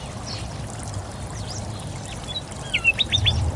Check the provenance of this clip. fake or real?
real